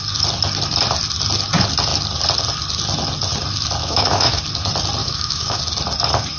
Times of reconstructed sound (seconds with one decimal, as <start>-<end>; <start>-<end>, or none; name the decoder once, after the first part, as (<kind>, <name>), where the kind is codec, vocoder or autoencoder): 3.8-4.4 (autoencoder, DAC-VAE); 5.0-5.6